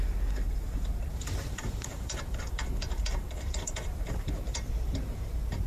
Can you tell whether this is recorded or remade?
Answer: remade